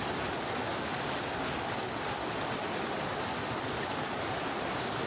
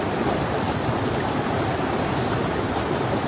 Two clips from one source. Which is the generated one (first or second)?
second